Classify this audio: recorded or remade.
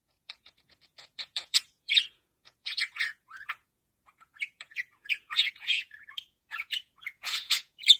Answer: remade